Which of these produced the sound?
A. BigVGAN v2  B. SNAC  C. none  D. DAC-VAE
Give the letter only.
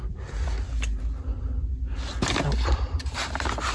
C